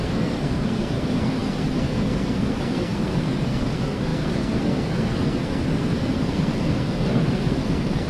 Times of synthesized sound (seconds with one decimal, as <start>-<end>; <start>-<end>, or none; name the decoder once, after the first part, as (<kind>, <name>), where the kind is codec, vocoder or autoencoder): 0.0-8.1 (codec, SNAC)